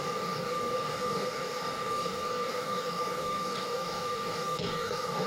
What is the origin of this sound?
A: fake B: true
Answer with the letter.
A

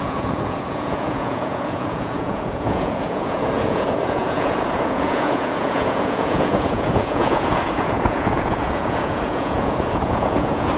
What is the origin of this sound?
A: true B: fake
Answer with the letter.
B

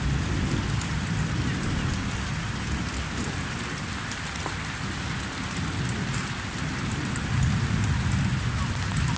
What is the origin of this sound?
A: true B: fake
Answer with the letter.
A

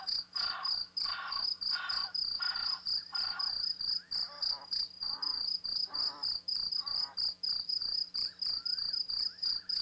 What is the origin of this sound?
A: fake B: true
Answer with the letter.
B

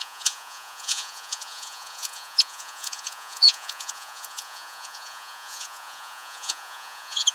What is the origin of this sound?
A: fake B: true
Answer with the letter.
A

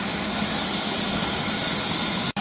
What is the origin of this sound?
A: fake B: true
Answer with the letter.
B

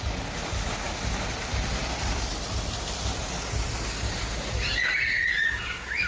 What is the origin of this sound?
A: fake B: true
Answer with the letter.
B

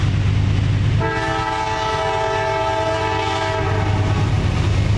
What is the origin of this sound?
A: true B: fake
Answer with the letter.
A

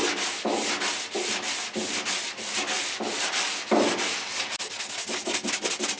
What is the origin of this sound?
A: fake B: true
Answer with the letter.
B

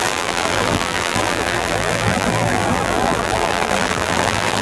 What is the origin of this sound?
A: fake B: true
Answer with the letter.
A